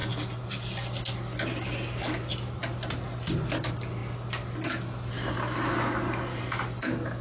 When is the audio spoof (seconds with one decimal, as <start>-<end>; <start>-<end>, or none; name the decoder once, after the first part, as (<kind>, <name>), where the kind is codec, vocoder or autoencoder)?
none

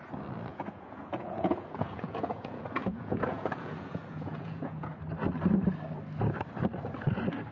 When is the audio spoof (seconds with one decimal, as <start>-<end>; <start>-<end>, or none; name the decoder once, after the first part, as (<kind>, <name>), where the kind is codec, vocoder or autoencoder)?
0.5-5.0 (vocoder, Vocos)

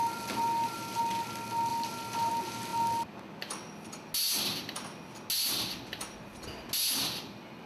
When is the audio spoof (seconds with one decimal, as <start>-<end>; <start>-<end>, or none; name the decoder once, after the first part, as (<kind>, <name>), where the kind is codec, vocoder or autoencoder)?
0.0-1.0 (vocoder, BigVGAN v2); 1.7-2.3

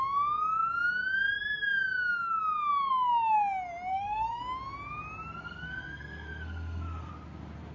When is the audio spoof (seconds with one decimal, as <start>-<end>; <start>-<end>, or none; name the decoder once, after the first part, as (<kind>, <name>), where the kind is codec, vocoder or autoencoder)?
3.9-4.4 (codec, SNAC); 5.3-7.1

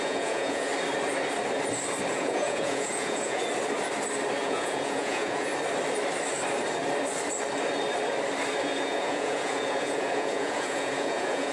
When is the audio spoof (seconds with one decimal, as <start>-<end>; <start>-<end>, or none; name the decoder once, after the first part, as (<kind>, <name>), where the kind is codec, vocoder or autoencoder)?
0.0-0.7 (vocoder, Vocos); 2.1-3.4; 4.4-5.5; 8.6-11.5

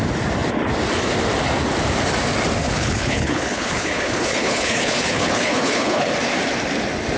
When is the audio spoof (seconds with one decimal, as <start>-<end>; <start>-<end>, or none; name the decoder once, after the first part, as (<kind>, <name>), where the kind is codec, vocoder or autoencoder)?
2.6-6.1 (codec, HILCodec)